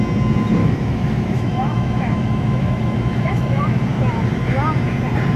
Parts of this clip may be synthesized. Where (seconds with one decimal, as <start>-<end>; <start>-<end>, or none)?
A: 0.6-3.8